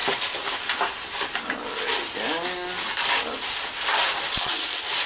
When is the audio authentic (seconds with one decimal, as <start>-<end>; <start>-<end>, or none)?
0.0-5.1